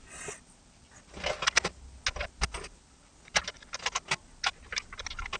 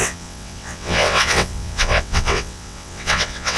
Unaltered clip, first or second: first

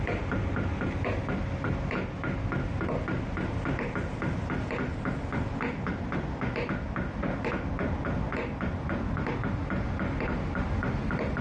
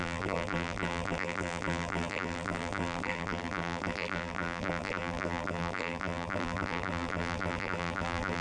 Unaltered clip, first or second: first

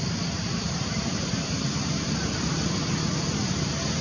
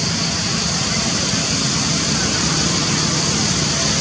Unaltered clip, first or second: second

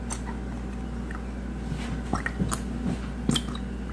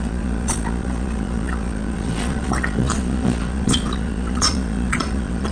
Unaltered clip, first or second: first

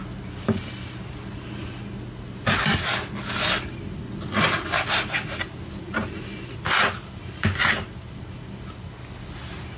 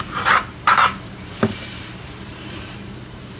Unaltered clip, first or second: first